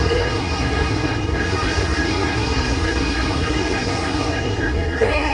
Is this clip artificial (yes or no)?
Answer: yes